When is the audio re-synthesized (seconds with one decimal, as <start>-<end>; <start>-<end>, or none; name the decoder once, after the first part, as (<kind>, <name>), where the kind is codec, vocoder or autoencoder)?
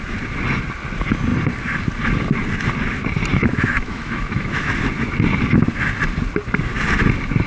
3.3-4.7 (autoencoder, DAC-VAE)